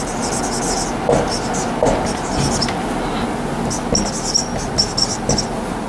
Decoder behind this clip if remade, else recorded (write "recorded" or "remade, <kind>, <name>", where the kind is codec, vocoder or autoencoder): recorded